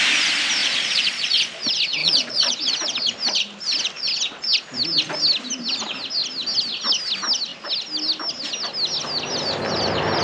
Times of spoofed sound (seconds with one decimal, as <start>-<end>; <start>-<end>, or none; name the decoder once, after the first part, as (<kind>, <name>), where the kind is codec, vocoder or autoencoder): 0.6-1.6 (vocoder, Vocos); 2.0-2.6